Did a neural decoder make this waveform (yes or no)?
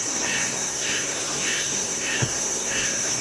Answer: yes